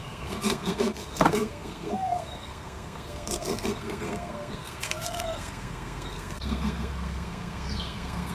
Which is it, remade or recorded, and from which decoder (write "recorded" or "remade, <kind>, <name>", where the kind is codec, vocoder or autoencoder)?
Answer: remade, codec, SNAC